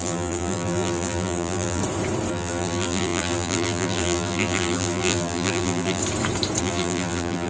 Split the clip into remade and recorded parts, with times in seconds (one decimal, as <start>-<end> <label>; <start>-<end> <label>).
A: 0.0-1.8 remade; 1.8-2.3 recorded; 2.3-6.0 remade; 6.0-6.6 recorded; 6.6-7.5 remade